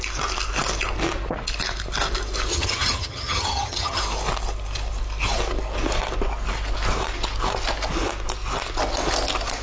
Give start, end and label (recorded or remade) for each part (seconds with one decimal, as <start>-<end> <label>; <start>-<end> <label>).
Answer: 0.0-2.5 recorded; 2.5-4.0 remade; 4.0-9.6 recorded